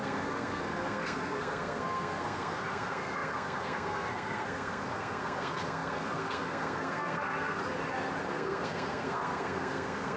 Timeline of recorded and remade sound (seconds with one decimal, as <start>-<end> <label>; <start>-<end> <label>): 0.0-7.6 remade; 7.6-8.2 recorded; 8.2-10.2 remade